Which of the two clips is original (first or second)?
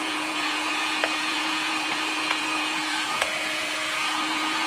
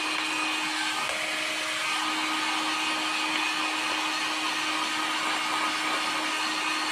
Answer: second